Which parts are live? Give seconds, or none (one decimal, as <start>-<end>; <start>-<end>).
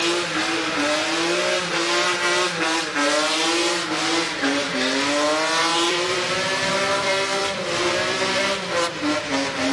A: 0.0-5.7; 6.3-7.4; 8.4-9.7